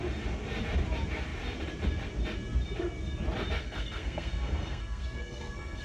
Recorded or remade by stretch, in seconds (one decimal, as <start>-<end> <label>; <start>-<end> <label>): 0.0-3.6 recorded; 3.6-5.8 remade